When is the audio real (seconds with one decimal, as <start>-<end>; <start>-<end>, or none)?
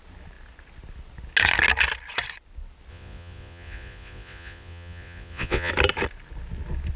0.0-2.9; 5.7-7.0